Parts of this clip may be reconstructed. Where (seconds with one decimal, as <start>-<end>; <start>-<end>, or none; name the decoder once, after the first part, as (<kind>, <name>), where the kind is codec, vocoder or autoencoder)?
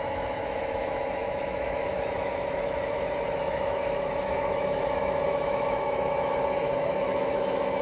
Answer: 0.0-7.8 (autoencoder, DAC-VAE)